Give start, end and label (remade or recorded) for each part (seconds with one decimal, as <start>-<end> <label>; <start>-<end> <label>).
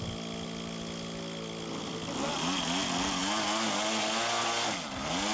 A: 0.0-5.3 recorded